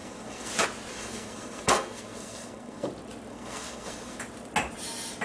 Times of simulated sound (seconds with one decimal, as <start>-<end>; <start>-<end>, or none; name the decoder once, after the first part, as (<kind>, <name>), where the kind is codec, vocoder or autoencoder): 0.0-0.5 (codec, SNAC); 0.9-2.9; 3.3-4.2